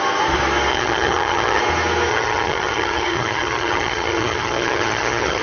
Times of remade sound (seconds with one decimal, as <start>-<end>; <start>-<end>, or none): 0.7-1.6; 2.1-5.4